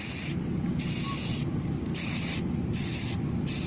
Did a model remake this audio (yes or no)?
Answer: no